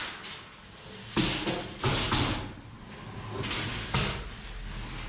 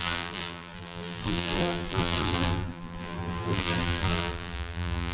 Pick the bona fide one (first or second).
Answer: first